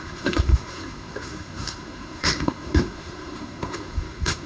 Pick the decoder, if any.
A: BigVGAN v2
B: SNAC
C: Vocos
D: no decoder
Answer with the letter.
B